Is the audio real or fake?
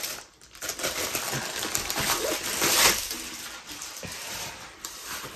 fake